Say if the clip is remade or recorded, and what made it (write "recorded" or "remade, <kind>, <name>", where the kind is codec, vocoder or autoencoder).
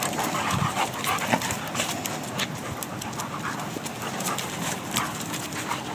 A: recorded